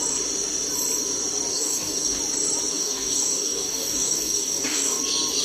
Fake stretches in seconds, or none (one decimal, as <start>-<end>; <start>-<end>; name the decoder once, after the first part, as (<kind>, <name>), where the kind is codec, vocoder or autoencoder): 1.5-2.2 (codec, DAC); 2.7-5.0

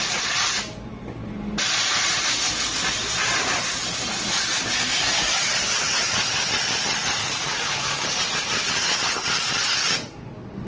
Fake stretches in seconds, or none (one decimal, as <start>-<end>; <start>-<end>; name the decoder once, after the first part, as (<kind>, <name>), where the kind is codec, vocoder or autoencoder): 7.2-8.2 (codec, DAC)